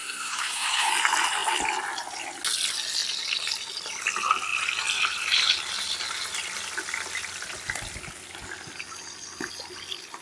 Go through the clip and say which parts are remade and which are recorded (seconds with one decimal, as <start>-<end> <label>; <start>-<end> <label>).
0.0-0.9 remade; 0.9-10.2 recorded